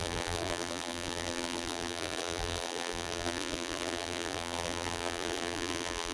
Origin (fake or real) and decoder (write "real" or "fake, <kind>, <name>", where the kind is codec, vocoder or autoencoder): fake, vocoder, BigVGAN v2